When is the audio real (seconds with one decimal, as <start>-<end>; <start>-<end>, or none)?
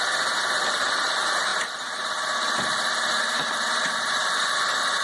0.0-1.5; 4.5-5.0